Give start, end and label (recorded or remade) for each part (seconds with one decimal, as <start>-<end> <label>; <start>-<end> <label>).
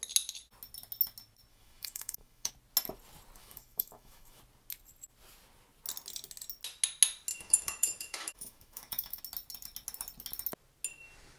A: 0.0-1.5 recorded; 1.5-2.5 remade; 2.5-3.4 recorded; 3.4-4.4 remade; 4.4-7.3 recorded; 7.3-9.2 remade; 9.2-11.4 recorded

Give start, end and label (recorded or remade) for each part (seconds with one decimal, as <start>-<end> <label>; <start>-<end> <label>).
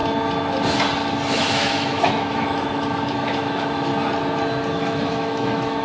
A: 0.0-1.3 recorded; 1.3-3.9 remade; 3.9-4.7 recorded; 4.7-5.8 remade